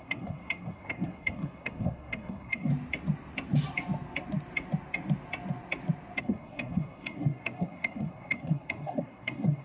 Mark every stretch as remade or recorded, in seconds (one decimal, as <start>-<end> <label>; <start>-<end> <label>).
0.0-2.7 remade; 2.7-6.2 recorded; 6.2-9.6 remade